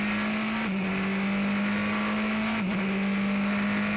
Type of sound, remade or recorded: recorded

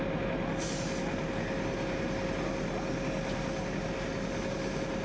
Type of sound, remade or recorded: recorded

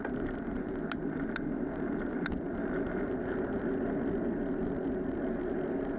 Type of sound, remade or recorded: recorded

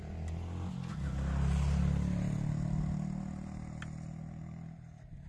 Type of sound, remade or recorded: recorded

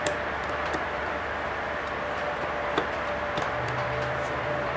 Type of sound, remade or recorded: remade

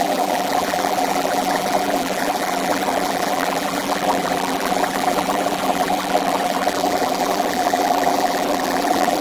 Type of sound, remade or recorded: remade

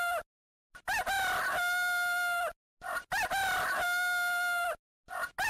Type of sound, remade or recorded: recorded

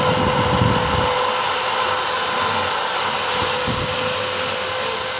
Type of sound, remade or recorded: recorded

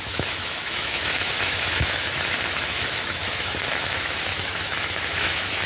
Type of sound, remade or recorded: remade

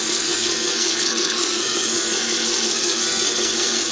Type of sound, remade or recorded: remade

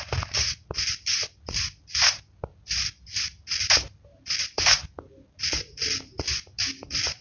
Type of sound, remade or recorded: recorded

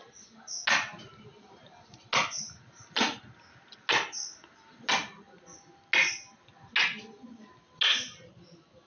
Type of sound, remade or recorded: recorded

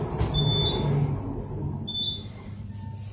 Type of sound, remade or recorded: recorded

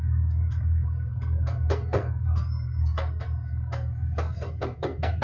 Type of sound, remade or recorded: remade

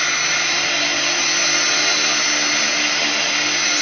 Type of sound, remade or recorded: recorded